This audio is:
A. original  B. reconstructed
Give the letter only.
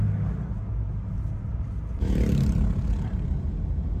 A